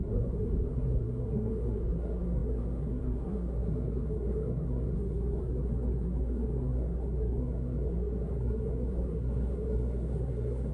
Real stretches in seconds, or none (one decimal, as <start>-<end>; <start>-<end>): none